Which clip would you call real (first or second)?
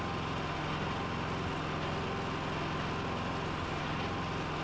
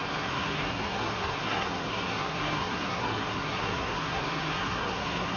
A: first